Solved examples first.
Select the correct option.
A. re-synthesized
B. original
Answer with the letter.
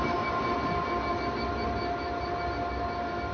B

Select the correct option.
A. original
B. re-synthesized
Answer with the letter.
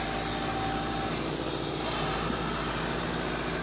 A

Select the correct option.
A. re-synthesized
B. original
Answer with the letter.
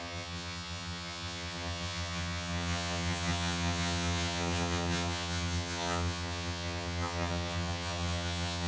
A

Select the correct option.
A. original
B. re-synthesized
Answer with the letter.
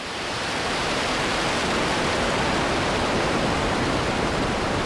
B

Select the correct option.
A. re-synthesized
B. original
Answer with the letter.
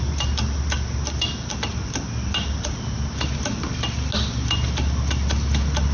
B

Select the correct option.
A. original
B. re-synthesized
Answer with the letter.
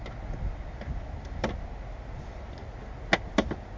A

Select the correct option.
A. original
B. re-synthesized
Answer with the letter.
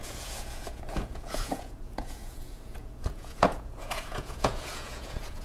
B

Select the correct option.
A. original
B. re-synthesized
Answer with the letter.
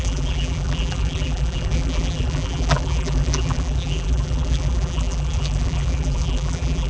B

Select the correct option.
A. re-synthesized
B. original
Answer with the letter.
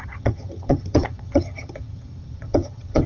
A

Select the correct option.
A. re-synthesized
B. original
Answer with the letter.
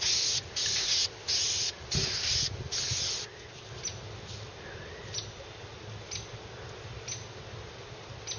B